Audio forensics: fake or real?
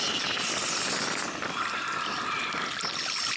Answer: real